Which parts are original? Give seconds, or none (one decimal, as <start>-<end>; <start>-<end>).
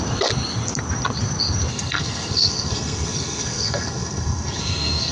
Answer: 0.0-1.7